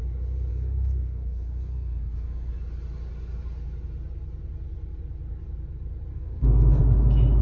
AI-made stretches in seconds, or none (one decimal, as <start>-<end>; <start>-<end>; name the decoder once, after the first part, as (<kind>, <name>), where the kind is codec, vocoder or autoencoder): 0.5-2.5 (codec, SNAC); 6.1-6.8